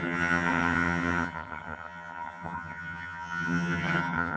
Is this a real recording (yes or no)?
no